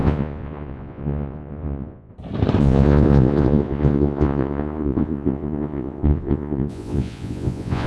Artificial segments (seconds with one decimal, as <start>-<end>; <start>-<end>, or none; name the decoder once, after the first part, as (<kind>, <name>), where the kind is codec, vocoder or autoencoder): 0.0-2.1 (vocoder, Vocos); 2.6-7.9